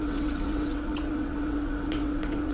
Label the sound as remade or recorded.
remade